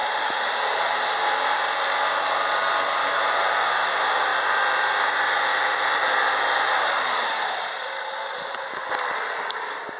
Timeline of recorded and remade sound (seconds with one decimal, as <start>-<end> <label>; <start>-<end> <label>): 0.0-2.6 recorded; 2.6-3.2 remade; 3.2-10.0 recorded